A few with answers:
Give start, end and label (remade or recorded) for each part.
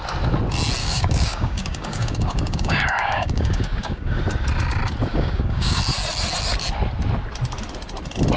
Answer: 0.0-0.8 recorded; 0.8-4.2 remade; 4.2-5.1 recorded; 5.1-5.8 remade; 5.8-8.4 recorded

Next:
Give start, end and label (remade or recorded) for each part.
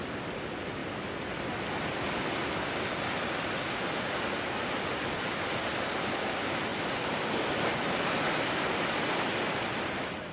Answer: 0.0-10.3 recorded